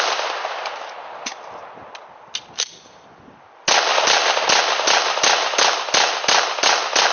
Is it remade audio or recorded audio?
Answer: recorded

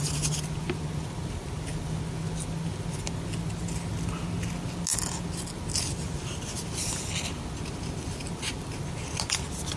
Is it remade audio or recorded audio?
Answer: recorded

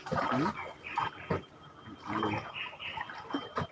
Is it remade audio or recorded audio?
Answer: recorded